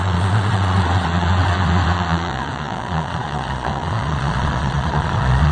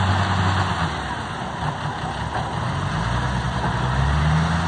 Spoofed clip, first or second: first